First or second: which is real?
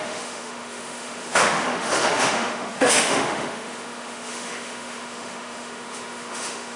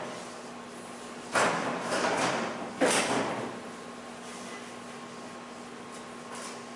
second